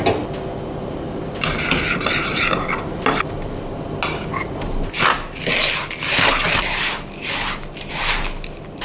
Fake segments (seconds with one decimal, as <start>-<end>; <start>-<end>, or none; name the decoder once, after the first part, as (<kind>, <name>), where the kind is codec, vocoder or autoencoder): none